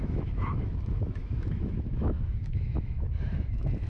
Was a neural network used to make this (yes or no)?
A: yes